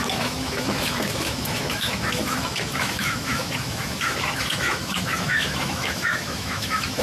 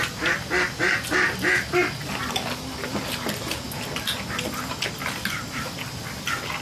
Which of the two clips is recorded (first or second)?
second